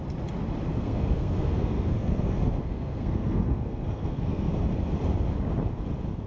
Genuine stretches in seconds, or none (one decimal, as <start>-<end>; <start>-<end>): 0.0-0.7; 4.5-6.3